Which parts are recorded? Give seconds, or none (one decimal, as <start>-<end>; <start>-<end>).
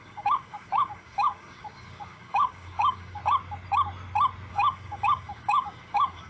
3.2-4.5